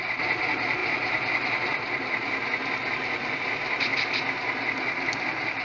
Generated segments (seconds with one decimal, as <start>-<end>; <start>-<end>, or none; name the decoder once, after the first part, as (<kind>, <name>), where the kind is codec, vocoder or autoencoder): none